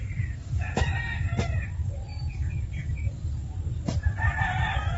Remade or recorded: recorded